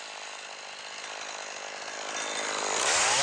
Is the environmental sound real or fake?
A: real